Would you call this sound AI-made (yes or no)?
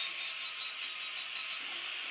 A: no